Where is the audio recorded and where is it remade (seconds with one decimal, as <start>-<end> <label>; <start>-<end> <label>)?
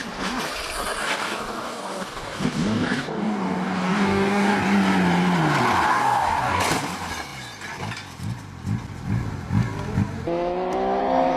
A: 0.0-1.0 recorded; 1.0-4.6 remade; 4.6-5.9 recorded; 5.9-6.6 remade; 6.6-11.4 recorded